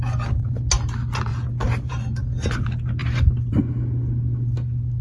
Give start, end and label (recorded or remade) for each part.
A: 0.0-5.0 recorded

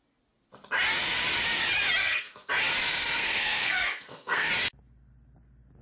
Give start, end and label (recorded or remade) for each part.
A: 0.0-2.0 recorded; 2.0-2.5 remade; 2.5-2.9 recorded; 2.9-4.5 remade; 4.5-5.8 recorded

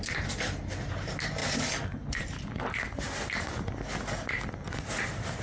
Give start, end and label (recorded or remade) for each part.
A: 0.0-5.4 recorded

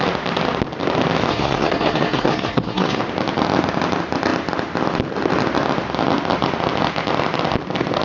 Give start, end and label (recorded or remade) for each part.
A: 0.0-1.3 recorded; 1.3-3.0 remade; 3.0-8.0 recorded